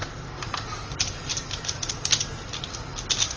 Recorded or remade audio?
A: recorded